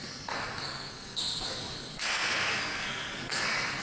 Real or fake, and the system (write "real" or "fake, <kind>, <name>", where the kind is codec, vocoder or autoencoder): fake, codec, SNAC